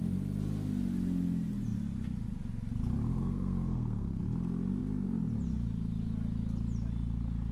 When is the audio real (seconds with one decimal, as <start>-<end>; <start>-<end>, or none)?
0.0-3.1; 4.2-7.5